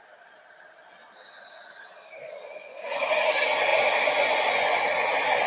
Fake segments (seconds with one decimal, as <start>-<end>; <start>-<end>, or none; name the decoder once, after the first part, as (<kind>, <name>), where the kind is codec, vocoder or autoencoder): 2.4-3.0 (vocoder, Vocos); 3.7-4.8